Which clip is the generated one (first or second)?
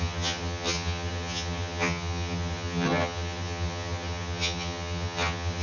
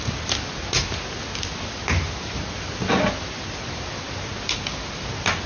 first